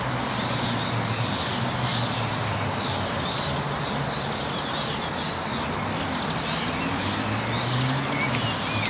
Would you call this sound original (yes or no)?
yes